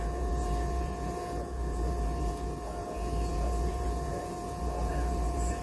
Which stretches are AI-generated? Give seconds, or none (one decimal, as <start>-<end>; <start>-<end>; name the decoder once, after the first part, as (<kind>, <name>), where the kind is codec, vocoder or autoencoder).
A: 0.0-5.6 (vocoder, Vocos)